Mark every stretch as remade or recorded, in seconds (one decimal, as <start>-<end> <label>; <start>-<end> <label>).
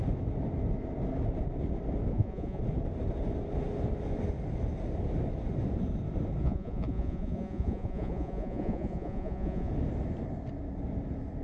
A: 0.0-2.1 recorded; 2.1-2.6 remade; 2.6-6.4 recorded; 6.4-9.7 remade; 9.7-11.4 recorded